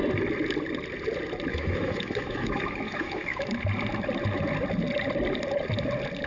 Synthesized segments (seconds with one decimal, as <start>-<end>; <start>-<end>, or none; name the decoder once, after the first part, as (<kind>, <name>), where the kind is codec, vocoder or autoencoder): 1.5-3.5 (autoencoder, DAC-VAE)

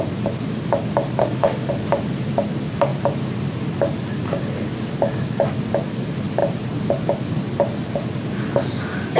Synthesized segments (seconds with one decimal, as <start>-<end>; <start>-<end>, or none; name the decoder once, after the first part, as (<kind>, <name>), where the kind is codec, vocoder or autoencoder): 1.2-1.7 (autoencoder, DAC-VAE)

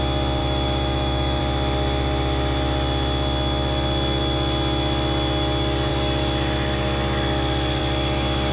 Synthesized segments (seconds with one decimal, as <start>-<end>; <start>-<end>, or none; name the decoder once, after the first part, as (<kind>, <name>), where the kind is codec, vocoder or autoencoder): 0.4-1.4 (autoencoder, DAC-VAE)

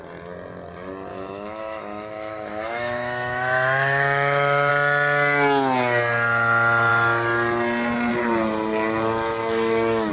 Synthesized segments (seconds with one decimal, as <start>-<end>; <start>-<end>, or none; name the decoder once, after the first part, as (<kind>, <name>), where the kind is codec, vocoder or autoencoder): 1.1-4.7 (autoencoder, DAC-VAE); 9.4-10.1

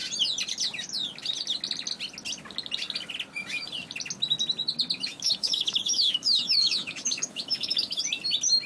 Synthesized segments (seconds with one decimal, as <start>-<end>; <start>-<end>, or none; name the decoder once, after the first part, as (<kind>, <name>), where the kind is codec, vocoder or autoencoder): 5.1-8.0 (autoencoder, DAC-VAE)

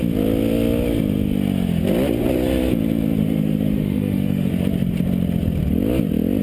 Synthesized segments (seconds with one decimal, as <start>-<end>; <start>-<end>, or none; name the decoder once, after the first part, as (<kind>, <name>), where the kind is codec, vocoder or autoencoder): 3.2-4.5 (autoencoder, DAC-VAE)

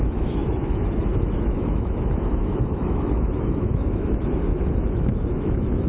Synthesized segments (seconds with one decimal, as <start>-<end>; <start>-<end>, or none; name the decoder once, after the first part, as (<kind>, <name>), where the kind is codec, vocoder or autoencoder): 0.0-5.9 (autoencoder, DAC-VAE)